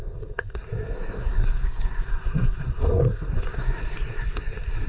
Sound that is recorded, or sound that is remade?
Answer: remade